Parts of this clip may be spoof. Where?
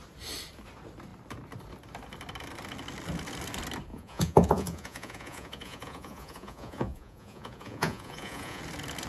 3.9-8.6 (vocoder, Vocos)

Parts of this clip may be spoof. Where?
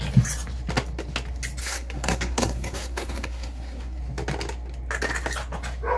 1.6-4.0 (codec, SNAC)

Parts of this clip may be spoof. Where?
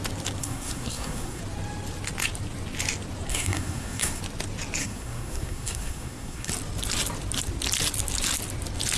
0.4-1.4 (codec, SNAC); 3.3-4.2; 4.8-6.5